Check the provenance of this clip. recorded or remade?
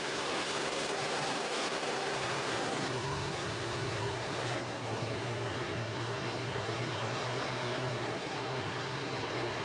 remade